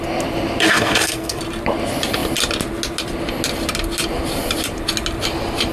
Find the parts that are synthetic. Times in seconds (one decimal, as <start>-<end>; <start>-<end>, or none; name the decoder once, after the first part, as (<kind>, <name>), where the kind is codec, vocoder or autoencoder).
0.7-1.4 (codec, SNAC)